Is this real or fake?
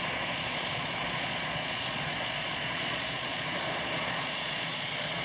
fake